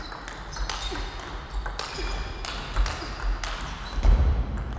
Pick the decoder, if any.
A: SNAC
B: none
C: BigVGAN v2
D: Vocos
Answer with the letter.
B